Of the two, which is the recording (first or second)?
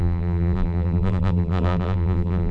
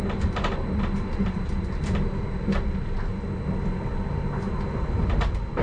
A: second